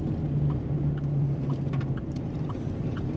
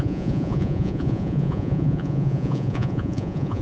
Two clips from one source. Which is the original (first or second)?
first